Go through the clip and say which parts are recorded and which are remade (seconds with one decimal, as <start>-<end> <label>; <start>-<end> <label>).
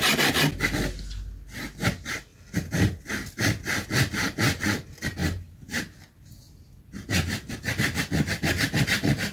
0.0-5.2 recorded; 5.2-5.8 remade; 5.8-9.3 recorded